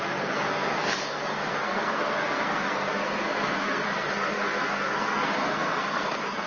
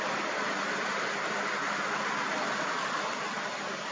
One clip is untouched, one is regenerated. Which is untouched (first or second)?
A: second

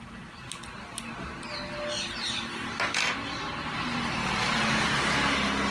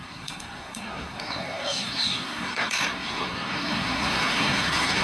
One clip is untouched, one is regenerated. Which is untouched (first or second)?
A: first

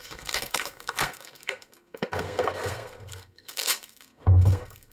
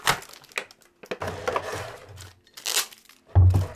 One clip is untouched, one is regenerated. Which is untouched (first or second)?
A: second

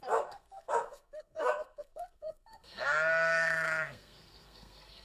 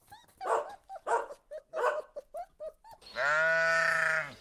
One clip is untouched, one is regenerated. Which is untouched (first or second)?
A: second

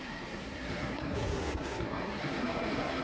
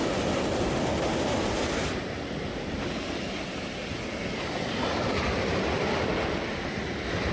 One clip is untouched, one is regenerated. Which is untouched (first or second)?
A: second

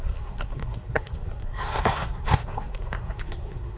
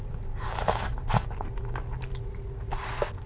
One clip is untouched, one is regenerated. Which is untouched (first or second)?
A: second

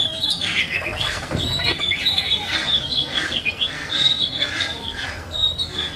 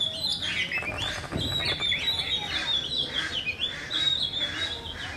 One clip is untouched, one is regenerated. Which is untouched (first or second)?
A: second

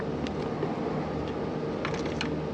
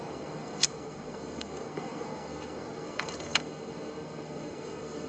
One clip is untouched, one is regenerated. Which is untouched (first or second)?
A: first